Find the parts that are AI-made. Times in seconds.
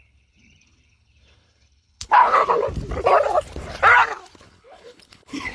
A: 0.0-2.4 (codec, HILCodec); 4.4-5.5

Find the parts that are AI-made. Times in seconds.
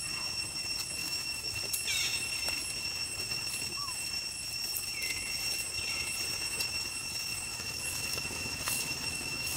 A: 1.0-1.6 (autoencoder, DAC-VAE); 7.5-9.6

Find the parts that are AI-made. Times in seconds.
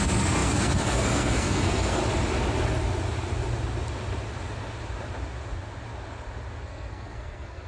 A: 0.0-2.0 (codec, SNAC); 6.6-7.7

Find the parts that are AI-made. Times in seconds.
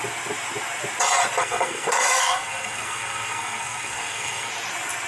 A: 1.4-4.5 (codec, SNAC)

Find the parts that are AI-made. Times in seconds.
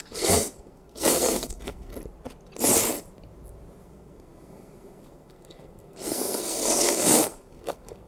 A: 0.0-1.9 (codec, SNAC); 3.8-8.1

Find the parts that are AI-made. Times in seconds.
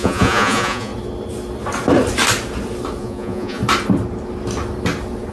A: 0.0-0.9 (vocoder, Vocos); 3.0-3.6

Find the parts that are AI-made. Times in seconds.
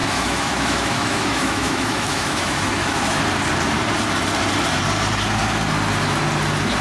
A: 0.0-3.2 (autoencoder, DAC-VAE)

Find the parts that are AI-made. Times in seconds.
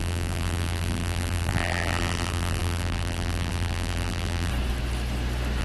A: 0.0-4.5 (vocoder, BigVGAN v2)